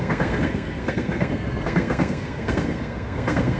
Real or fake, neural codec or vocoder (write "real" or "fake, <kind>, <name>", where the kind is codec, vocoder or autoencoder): fake, codec, SNAC